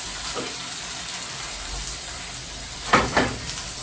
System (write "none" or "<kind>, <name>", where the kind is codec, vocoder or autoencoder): none